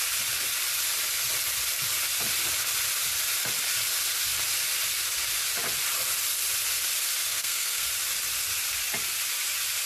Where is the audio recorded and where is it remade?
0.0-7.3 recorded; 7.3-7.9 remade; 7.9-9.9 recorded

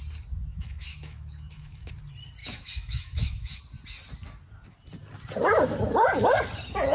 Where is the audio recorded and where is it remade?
0.0-0.5 recorded; 0.5-1.9 remade; 1.9-2.4 recorded; 2.4-3.6 remade; 3.6-6.9 recorded

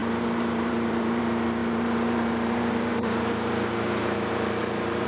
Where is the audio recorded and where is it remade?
0.0-1.2 remade; 1.2-1.6 recorded; 1.6-5.1 remade

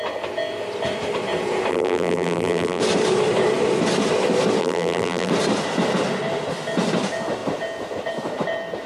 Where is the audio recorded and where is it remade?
0.0-1.7 recorded; 1.7-2.8 remade; 2.8-4.6 recorded; 4.6-5.3 remade; 5.3-8.9 recorded

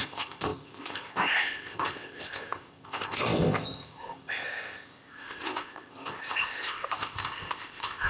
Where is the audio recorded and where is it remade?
0.0-8.1 remade

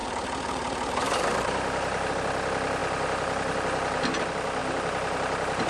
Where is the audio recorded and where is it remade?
0.0-2.1 remade; 2.1-2.8 recorded; 2.8-4.0 remade; 4.0-4.6 recorded; 4.6-5.7 remade

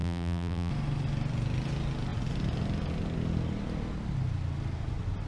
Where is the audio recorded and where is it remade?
0.0-0.7 remade; 0.7-5.3 recorded